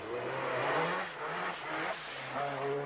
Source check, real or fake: real